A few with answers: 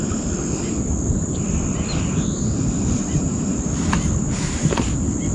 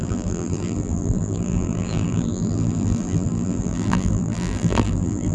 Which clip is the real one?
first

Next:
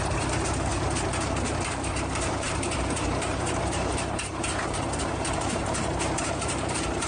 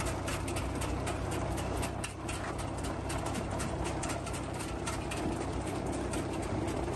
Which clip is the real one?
second